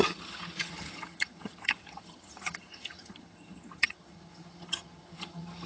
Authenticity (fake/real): fake